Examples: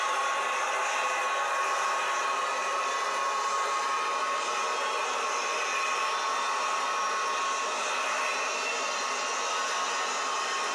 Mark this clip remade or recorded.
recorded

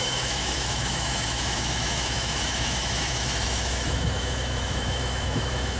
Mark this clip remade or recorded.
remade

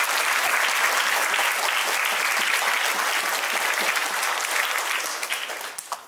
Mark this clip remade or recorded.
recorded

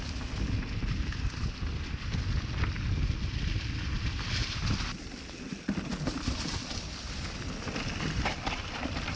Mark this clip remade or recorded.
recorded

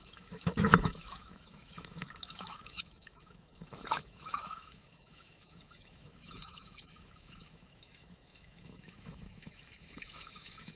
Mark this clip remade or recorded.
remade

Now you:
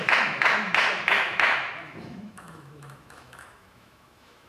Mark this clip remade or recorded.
remade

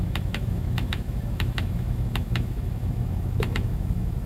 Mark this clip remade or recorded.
remade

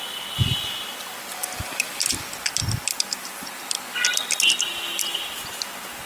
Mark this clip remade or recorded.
recorded